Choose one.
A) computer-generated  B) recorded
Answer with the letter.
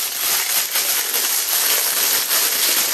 B